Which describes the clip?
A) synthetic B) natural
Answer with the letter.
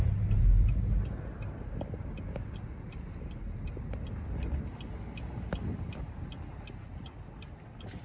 B